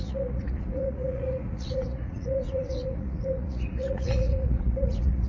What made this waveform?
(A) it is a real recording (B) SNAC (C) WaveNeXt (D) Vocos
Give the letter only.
D